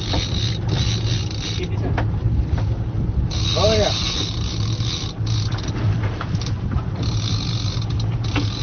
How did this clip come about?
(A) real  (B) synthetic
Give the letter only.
A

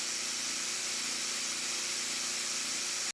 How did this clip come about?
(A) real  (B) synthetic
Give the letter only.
A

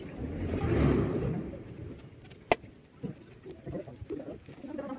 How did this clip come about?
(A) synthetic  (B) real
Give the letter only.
B